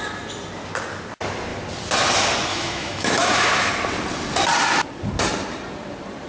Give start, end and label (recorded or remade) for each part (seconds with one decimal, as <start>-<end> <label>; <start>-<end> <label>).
0.0-2.5 recorded; 2.5-3.7 remade; 3.7-6.3 recorded